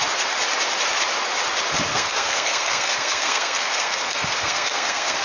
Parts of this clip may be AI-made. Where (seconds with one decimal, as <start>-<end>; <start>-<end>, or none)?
1.9-5.2